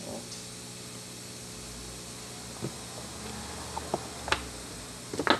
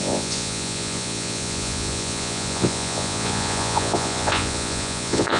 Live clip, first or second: first